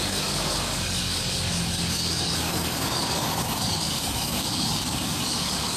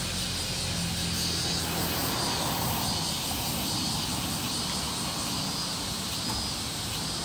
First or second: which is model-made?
first